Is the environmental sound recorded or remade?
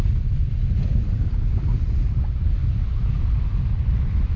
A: recorded